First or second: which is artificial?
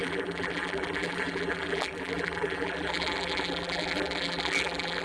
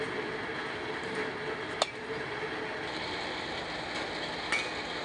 first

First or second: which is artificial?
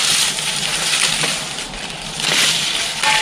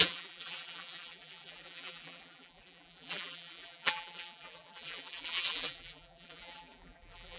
second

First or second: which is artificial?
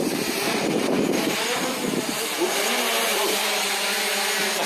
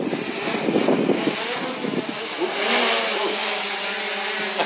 first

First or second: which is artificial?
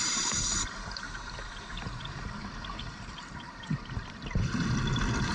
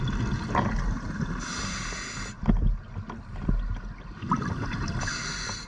first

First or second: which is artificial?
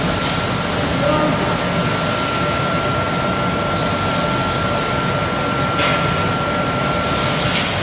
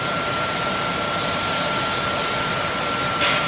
second